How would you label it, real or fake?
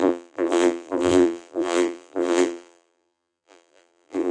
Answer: fake